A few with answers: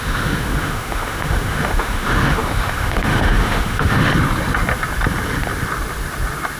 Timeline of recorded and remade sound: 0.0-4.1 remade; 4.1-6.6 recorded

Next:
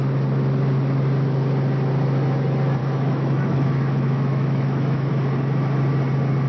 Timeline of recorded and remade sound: 0.0-2.8 recorded; 2.8-5.1 remade; 5.1-6.5 recorded